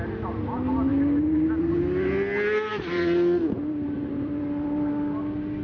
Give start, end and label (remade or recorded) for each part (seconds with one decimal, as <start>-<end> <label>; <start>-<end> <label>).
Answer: 0.0-0.9 recorded; 0.9-1.8 remade; 1.8-2.7 recorded; 2.7-4.9 remade; 4.9-5.6 recorded